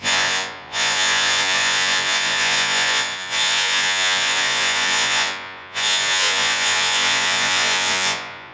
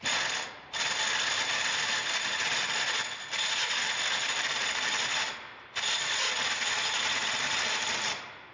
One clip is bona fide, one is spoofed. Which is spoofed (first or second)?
first